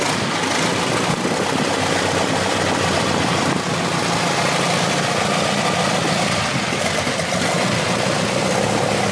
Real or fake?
real